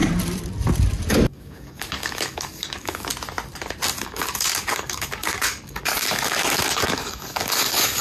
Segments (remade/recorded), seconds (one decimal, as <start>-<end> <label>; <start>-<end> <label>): 0.0-1.1 recorded; 1.1-3.1 remade; 3.1-4.0 recorded; 4.0-8.0 remade